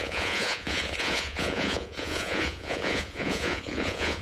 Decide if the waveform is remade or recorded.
remade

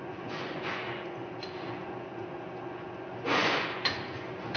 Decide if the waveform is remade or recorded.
remade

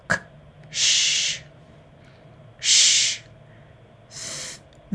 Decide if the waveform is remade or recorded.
recorded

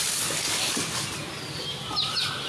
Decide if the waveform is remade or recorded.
recorded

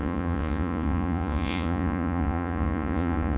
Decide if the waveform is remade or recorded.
remade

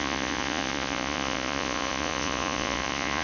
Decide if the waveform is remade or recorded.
remade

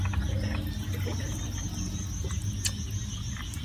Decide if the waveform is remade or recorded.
recorded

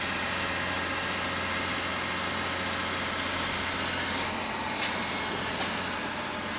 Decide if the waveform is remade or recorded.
recorded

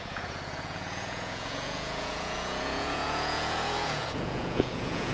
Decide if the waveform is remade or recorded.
remade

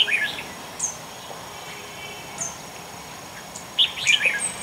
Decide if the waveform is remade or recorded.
recorded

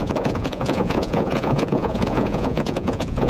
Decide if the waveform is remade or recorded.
remade